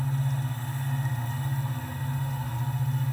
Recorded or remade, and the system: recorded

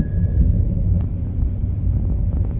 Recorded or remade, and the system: recorded